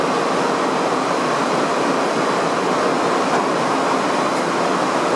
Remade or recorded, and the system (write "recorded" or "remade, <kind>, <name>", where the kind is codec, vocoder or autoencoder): remade, vocoder, BigVGAN v2